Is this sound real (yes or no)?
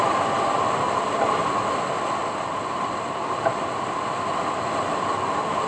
yes